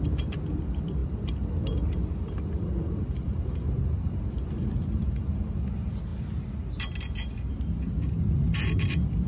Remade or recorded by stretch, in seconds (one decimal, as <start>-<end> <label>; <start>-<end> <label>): 0.0-9.3 recorded